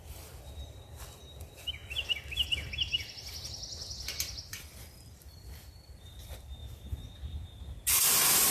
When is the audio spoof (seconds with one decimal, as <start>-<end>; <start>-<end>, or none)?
0.0-1.8; 4.6-6.6; 7.9-8.5